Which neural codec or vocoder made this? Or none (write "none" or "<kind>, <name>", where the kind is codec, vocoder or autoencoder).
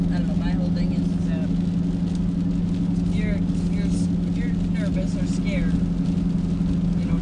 none